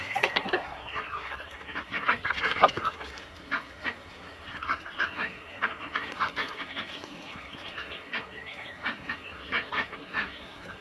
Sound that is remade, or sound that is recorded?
remade